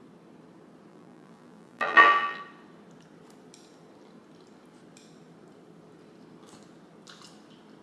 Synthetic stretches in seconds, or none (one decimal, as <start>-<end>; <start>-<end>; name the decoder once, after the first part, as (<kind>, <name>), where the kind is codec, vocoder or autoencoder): 0.9-2.4 (vocoder, BigVGAN v2)